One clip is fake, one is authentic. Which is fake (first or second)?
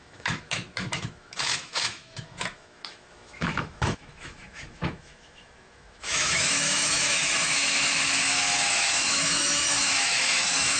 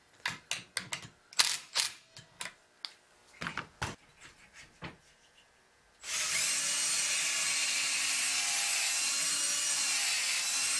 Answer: first